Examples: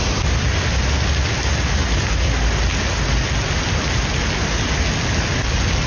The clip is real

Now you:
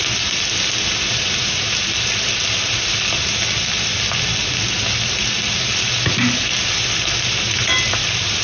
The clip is real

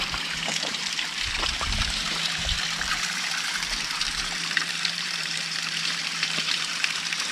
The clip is fake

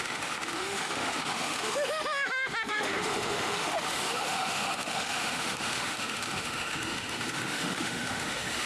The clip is fake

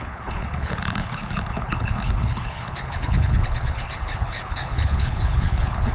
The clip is fake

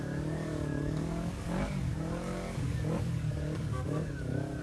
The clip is fake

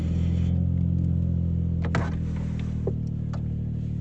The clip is real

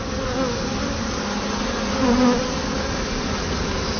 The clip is real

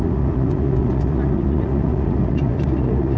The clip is fake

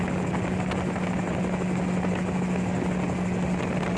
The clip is real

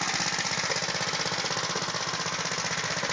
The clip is real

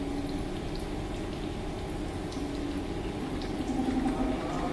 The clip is real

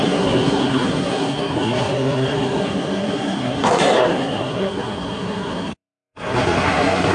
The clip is fake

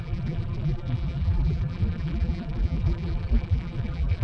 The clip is fake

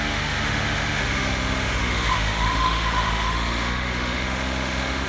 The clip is fake